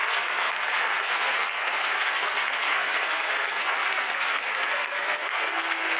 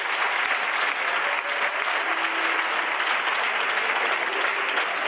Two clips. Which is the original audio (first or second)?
second